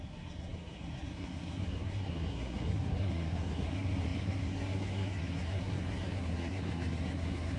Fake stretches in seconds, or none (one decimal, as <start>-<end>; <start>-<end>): 0.0-7.6